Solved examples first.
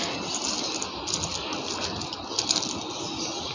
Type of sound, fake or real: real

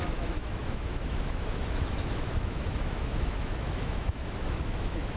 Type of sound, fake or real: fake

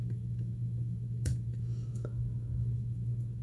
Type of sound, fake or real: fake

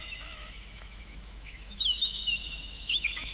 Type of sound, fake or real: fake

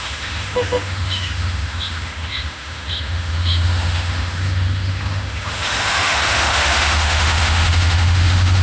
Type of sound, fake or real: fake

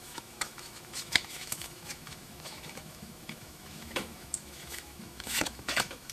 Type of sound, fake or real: fake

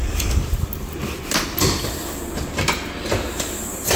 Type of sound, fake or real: real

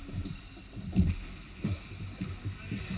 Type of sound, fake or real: real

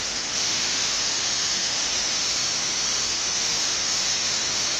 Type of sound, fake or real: fake